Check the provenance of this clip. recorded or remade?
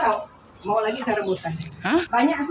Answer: recorded